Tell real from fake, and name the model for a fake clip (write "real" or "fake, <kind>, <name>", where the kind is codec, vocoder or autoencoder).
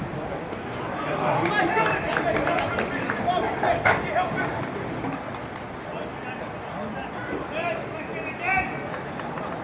real